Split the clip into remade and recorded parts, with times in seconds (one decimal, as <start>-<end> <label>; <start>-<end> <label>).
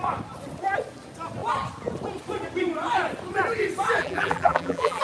0.0-4.0 recorded; 4.0-5.0 remade